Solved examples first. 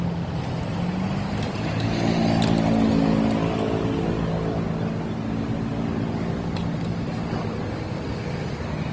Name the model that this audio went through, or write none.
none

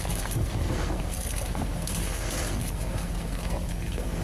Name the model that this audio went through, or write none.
codec, SNAC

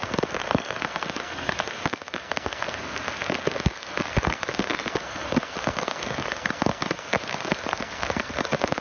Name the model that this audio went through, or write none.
codec, SNAC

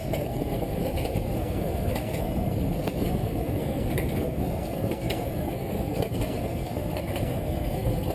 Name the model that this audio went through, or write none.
codec, SNAC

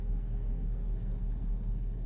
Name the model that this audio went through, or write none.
codec, SNAC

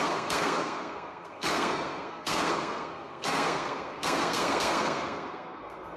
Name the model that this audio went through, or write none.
codec, SNAC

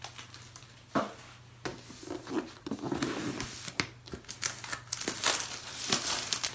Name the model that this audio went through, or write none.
none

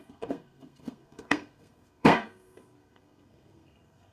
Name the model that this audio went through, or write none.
codec, SNAC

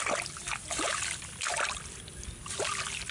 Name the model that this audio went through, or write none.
none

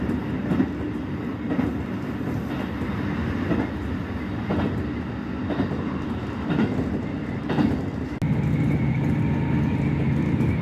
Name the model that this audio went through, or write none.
none